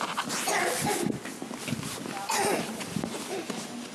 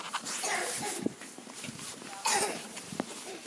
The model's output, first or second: second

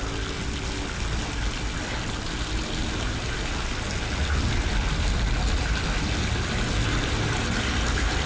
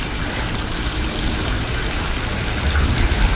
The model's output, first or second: second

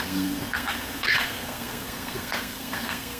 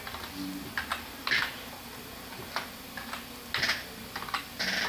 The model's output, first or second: first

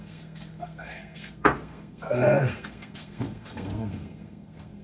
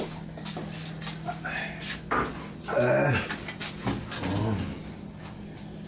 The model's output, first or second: first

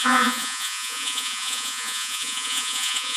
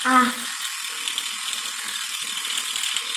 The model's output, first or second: first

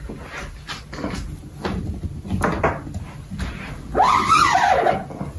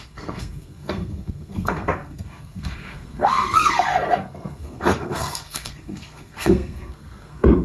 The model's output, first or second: second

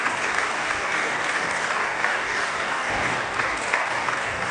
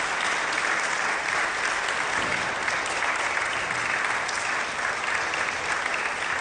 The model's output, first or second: first